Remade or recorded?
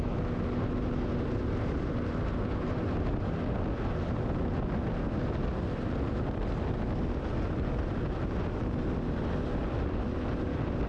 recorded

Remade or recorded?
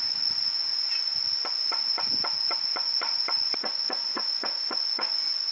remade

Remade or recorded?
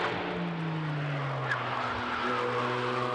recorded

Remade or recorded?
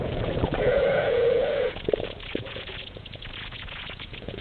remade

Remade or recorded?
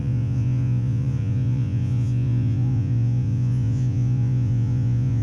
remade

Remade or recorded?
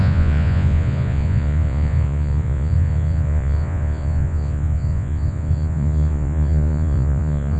remade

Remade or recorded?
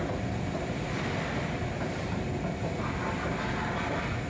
recorded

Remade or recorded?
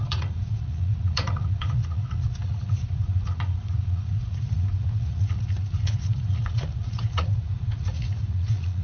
remade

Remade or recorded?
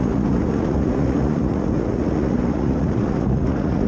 remade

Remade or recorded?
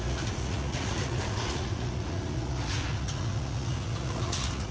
remade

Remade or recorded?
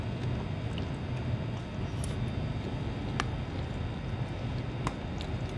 recorded